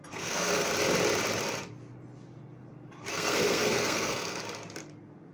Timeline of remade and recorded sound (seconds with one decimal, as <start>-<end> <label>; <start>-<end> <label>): 0.0-0.7 remade; 0.7-3.1 recorded; 3.1-4.4 remade; 4.4-5.3 recorded